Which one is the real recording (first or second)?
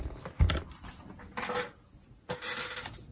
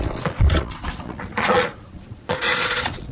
first